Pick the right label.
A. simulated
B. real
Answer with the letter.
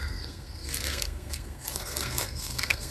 A